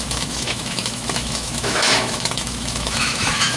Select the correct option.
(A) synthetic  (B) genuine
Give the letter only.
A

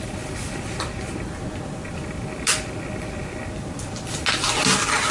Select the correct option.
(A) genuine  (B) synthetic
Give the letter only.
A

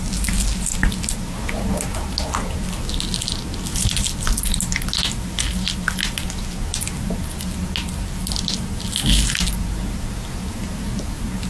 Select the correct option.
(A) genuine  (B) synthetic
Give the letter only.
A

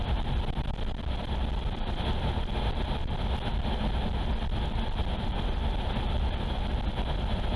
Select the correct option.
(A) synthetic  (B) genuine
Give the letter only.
B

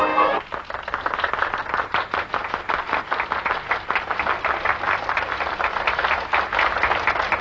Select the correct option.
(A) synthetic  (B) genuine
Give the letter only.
B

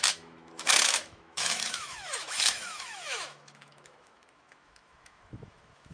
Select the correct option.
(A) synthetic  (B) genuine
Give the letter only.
A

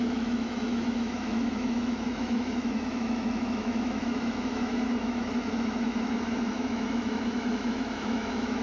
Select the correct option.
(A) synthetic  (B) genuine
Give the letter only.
A